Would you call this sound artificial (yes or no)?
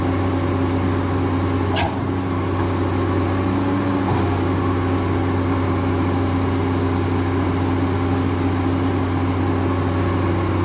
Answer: no